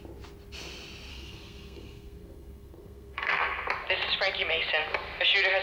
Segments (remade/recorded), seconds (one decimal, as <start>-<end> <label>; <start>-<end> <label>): 0.0-1.1 recorded; 1.1-3.7 remade; 3.7-5.6 recorded